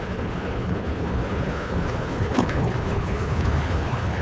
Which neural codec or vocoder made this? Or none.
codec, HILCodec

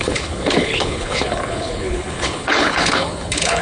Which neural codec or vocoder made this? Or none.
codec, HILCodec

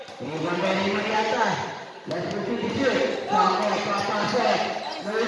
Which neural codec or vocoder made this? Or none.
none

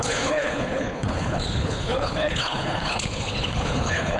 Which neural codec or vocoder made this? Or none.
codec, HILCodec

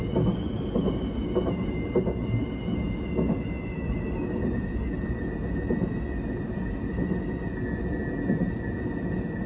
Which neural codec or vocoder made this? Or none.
none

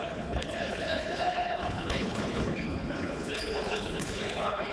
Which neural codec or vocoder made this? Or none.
codec, HILCodec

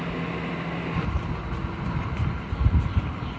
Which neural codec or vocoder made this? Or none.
none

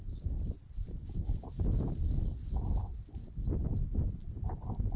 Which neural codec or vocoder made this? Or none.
none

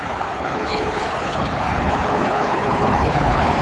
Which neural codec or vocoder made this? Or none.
codec, HILCodec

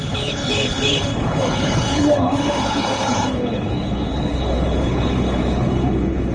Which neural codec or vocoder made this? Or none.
codec, HILCodec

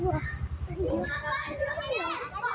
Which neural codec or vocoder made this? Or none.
none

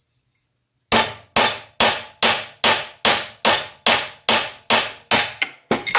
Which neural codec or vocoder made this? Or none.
none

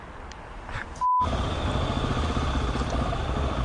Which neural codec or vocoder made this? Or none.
none